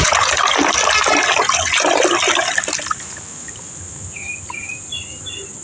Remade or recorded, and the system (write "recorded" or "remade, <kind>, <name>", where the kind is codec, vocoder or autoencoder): recorded